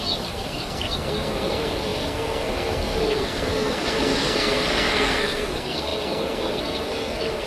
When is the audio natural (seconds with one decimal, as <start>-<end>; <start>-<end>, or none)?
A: none